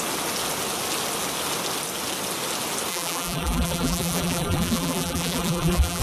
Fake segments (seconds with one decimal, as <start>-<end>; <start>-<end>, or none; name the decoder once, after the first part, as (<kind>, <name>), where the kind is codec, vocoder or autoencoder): 2.9-6.0 (vocoder, BigVGAN v2)